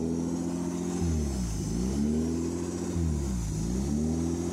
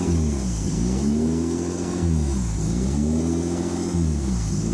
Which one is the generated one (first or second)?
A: second